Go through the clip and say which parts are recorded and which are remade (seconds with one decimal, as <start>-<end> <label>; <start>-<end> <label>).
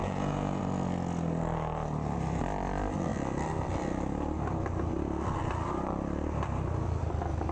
0.0-0.6 remade; 0.6-7.5 recorded